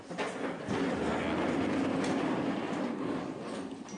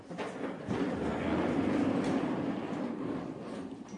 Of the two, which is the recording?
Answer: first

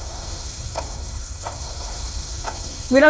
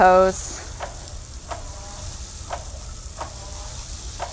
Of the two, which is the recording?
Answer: second